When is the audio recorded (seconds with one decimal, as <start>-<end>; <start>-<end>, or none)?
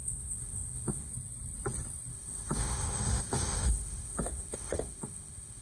1.1-2.1